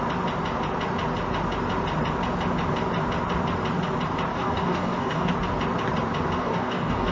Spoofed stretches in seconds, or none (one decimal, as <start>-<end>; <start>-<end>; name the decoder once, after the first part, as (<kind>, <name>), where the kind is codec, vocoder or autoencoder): 4.3-5.3 (codec, DAC); 6.4-7.1